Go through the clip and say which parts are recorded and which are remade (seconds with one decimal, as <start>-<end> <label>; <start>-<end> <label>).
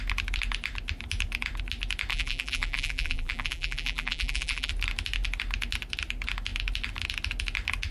0.0-2.1 recorded; 2.1-4.7 remade; 4.7-7.9 recorded